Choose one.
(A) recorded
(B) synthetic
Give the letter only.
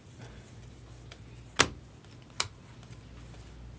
A